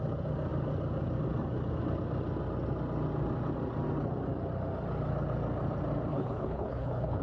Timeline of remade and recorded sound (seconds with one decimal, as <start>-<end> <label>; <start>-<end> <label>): 0.0-6.1 recorded; 6.1-7.2 remade